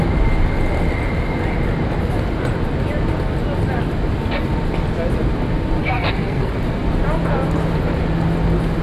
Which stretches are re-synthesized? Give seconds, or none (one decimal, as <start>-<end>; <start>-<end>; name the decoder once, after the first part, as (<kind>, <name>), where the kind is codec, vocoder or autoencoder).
5.8-6.5 (codec, SNAC)